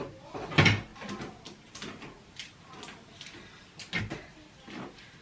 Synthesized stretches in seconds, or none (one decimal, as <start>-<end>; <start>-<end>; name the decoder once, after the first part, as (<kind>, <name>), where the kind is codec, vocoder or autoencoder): none